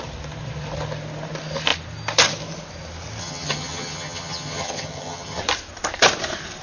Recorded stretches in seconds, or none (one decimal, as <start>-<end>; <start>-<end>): 0.0-3.2; 5.4-6.6